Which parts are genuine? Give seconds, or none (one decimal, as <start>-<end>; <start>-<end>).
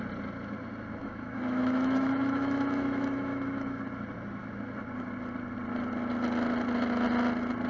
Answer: 0.0-1.0; 3.8-7.7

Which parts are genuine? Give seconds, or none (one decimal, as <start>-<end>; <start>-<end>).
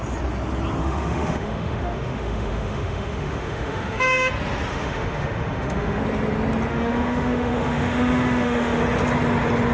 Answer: 0.0-0.8; 4.3-4.7; 6.0-6.7; 8.8-9.7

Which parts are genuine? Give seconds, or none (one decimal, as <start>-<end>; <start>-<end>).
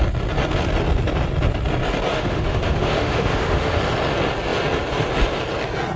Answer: 0.0-2.1; 3.8-6.0